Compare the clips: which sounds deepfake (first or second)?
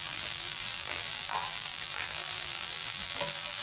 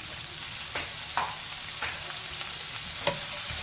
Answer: first